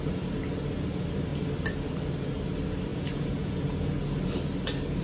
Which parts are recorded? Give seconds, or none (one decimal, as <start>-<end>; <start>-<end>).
0.0-2.9; 3.9-5.0